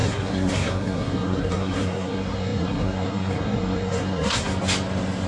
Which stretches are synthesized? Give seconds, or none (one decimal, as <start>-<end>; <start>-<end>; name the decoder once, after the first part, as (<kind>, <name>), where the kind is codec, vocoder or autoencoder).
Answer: 0.0-4.5 (codec, SNAC)